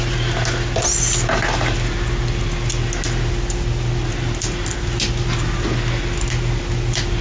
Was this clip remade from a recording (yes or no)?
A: no